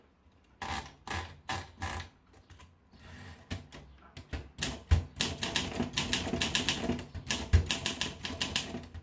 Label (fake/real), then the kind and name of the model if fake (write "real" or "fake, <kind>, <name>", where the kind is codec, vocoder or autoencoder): real